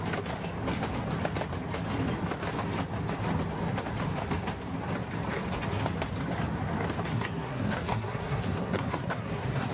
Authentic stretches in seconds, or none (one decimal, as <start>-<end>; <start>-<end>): 0.0-7.1